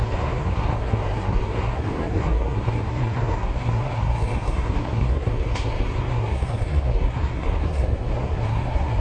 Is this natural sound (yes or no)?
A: no